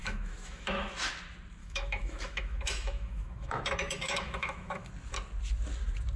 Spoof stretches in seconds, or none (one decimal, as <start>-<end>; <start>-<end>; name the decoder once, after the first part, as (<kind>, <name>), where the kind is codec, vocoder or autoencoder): 0.0-0.9 (autoencoder, DAC-VAE); 1.6-4.9